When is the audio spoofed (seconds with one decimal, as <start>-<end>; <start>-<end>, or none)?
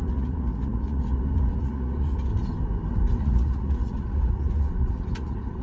0.0-2.3; 3.2-5.6